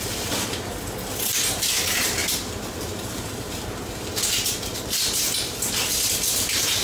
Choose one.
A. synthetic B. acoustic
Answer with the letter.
A